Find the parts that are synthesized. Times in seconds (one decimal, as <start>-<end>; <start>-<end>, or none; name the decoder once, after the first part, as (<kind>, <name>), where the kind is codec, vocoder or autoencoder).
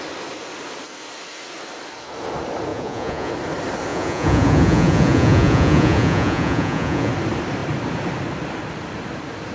2.7-3.3 (vocoder, Vocos); 3.9-7.1